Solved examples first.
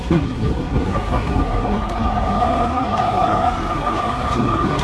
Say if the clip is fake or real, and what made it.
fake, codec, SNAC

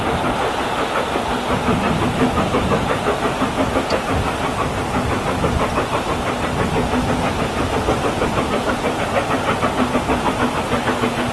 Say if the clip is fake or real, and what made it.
real